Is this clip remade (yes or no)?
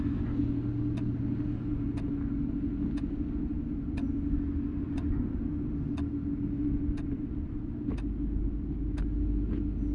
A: no